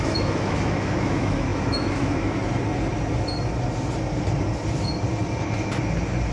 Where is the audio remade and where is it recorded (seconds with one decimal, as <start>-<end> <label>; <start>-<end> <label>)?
0.0-2.4 remade; 2.4-6.3 recorded